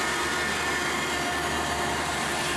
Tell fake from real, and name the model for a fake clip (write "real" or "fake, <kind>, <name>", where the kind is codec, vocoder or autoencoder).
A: real